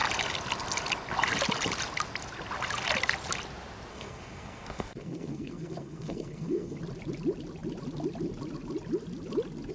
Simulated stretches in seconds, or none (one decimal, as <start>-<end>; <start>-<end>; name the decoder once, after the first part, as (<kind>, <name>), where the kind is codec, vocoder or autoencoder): 3.9-6.8 (codec, SNAC)